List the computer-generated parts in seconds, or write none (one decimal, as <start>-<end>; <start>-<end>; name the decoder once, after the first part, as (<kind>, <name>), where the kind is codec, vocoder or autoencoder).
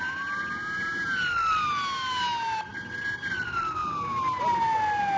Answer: none